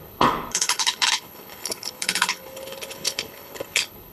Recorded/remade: remade